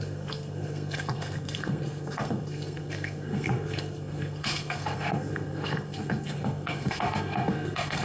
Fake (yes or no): yes